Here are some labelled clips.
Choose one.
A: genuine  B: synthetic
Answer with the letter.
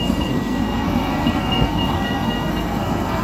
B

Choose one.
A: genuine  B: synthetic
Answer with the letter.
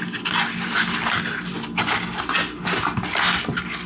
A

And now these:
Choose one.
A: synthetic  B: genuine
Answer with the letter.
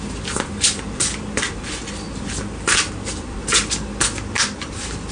B